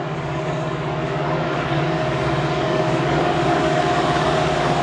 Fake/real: fake